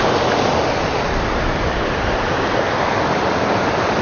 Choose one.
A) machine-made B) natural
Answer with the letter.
B